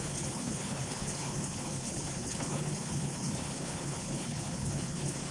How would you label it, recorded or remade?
remade